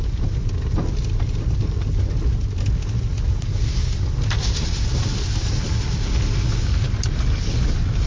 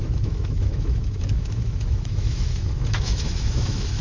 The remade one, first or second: second